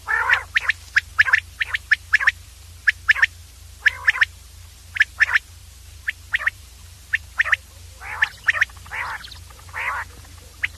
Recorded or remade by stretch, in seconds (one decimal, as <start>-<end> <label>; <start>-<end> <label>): 0.0-1.1 recorded; 1.1-2.7 remade; 2.7-5.6 recorded; 5.6-9.0 remade; 9.0-10.8 recorded